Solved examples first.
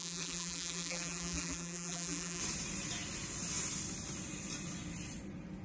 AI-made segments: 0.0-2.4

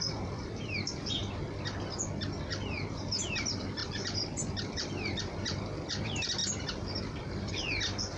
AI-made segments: 0.0-1.2; 3.2-8.2

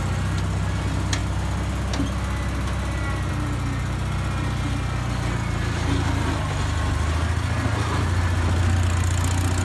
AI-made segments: none

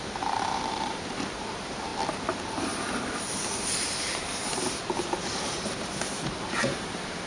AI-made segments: 0.0-1.9; 5.2-7.3

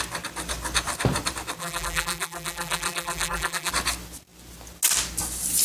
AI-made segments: 1.6-3.7